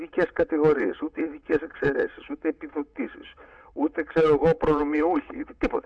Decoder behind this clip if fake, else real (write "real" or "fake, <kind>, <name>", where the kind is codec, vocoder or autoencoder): fake, vocoder, WaveNeXt